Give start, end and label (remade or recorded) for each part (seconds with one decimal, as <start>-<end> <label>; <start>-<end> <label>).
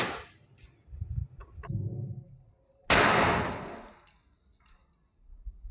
0.0-5.7 recorded